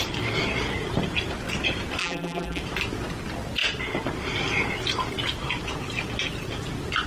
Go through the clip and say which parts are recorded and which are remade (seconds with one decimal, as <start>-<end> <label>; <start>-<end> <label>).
0.0-2.0 recorded; 2.0-2.6 remade; 2.6-7.1 recorded